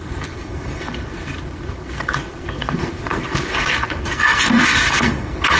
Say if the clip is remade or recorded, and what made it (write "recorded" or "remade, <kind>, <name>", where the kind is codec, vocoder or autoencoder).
remade, codec, SNAC